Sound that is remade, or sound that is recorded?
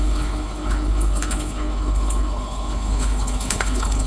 remade